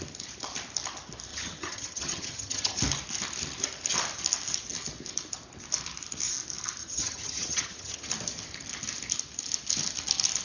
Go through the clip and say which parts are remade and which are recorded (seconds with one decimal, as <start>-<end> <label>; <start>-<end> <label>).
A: 0.0-1.3 recorded; 1.3-2.8 remade; 2.8-6.8 recorded; 6.8-8.1 remade; 8.1-10.4 recorded